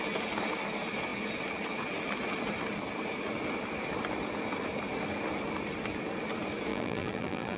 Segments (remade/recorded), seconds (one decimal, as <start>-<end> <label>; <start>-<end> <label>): 0.0-6.7 recorded; 6.7-7.6 remade